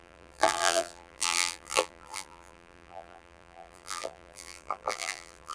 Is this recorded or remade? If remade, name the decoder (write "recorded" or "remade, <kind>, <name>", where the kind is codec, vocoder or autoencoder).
remade, vocoder, BigVGAN v2